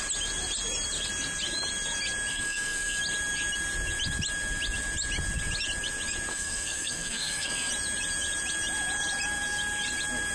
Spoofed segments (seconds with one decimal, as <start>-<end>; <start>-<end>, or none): 2.3-3.0; 6.3-7.7